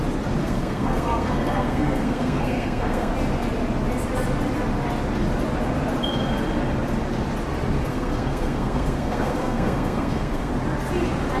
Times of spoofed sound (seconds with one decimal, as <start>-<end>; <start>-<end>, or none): 0.4-3.1; 7.9-10.5